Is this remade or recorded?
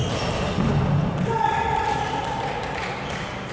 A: recorded